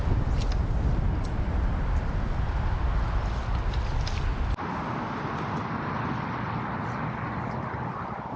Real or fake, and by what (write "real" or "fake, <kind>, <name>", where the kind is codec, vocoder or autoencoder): real